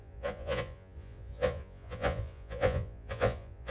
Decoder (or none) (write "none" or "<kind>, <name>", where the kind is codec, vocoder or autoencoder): vocoder, Vocos